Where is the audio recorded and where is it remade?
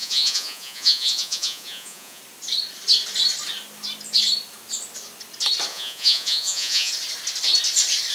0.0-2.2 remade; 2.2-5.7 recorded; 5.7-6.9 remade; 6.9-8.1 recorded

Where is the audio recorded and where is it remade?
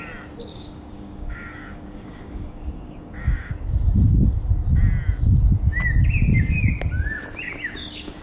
0.0-0.5 recorded; 0.5-3.5 remade; 3.5-8.2 recorded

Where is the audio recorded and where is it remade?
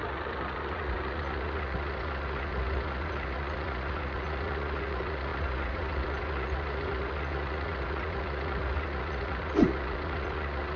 0.0-10.8 remade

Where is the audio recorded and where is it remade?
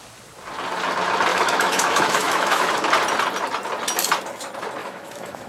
0.0-1.3 recorded; 1.3-2.7 remade; 2.7-4.8 recorded; 4.8-5.5 remade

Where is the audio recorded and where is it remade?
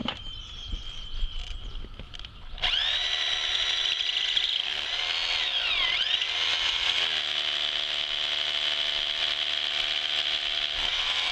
0.0-2.2 recorded; 2.2-4.7 remade; 4.7-9.2 recorded; 9.2-11.3 remade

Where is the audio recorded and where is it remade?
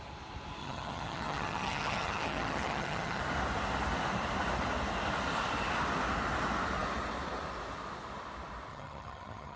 0.0-0.6 recorded; 0.6-3.2 remade; 3.2-8.7 recorded; 8.7-9.6 remade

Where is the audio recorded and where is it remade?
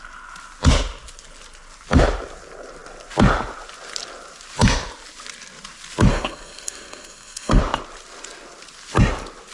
0.0-6.1 recorded; 6.1-7.6 remade; 7.6-9.5 recorded